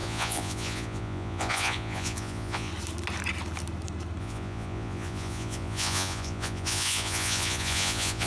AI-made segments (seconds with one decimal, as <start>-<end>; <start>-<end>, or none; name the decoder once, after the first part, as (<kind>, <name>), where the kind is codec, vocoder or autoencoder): 0.0-2.7 (vocoder, Vocos); 4.2-8.3